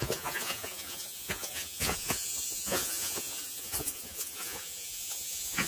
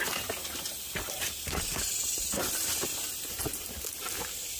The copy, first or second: first